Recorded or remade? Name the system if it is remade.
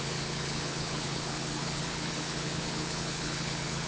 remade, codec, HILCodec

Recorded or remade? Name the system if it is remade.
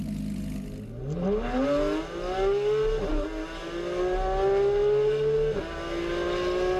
recorded